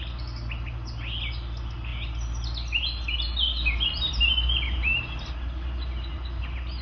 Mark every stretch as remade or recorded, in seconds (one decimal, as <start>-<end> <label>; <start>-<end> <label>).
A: 0.0-6.8 recorded